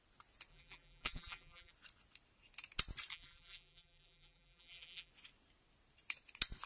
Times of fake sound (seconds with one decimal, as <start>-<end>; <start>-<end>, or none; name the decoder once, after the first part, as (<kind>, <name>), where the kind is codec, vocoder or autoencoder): 0.5-1.7 (vocoder, BigVGAN v2); 3.1-5.1